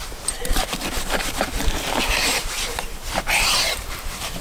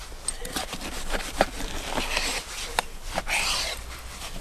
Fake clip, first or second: first